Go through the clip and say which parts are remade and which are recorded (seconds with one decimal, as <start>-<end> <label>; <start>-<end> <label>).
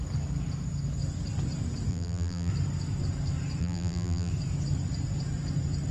0.0-1.9 recorded; 1.9-2.5 remade; 2.5-3.6 recorded; 3.6-4.3 remade; 4.3-5.9 recorded